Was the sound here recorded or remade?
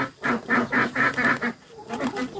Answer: recorded